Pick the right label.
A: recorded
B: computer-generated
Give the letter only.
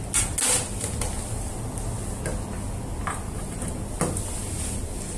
A